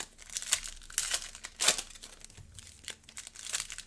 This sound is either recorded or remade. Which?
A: recorded